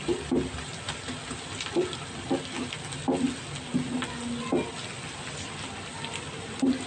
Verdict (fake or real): real